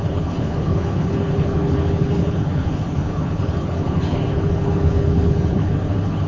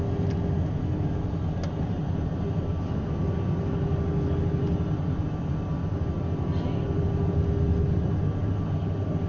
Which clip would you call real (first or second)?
second